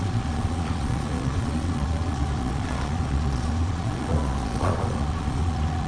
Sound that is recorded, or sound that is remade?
remade